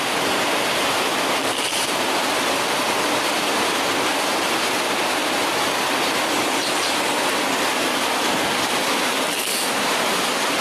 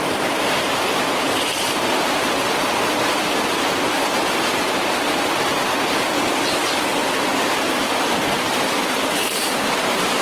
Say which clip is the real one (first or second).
first